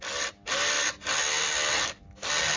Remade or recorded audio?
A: recorded